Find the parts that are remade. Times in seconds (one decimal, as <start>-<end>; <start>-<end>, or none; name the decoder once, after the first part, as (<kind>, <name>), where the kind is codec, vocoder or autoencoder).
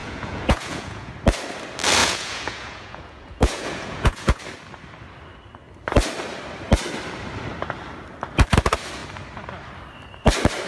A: 0.0-1.1 (vocoder, Vocos); 2.0-4.4